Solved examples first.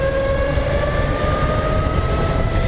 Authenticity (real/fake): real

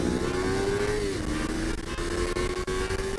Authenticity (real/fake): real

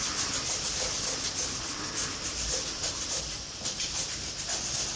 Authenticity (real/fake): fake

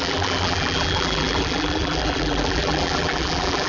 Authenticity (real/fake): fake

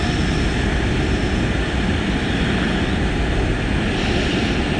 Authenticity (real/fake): real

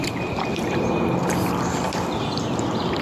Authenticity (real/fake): real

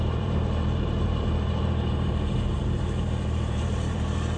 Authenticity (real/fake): fake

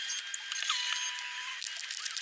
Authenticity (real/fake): real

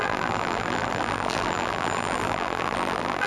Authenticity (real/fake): fake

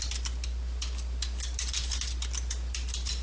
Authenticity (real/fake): real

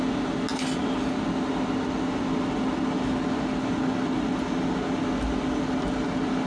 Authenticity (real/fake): real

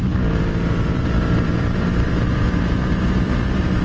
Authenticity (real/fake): fake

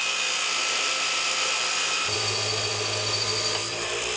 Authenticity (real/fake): fake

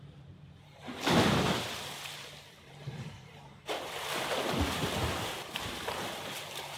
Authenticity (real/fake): fake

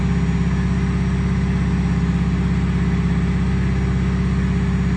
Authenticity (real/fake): real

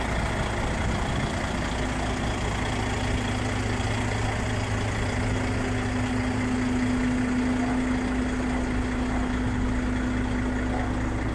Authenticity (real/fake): real